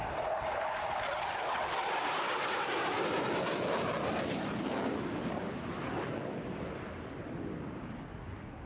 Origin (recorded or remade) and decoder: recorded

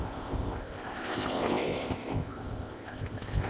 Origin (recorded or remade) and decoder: remade, codec, ZipCodec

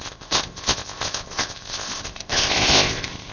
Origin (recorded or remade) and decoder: remade, codec, ZipCodec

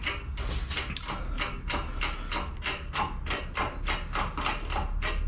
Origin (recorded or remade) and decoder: recorded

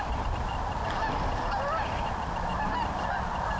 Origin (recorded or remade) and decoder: recorded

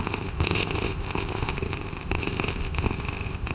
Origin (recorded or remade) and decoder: remade, codec, ZipCodec